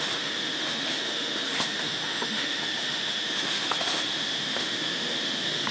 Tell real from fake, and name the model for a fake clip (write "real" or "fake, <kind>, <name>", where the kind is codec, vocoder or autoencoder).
fake, autoencoder, DAC-VAE